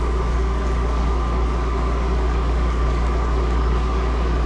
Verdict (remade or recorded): remade